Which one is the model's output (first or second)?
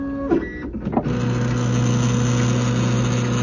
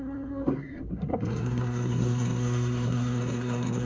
second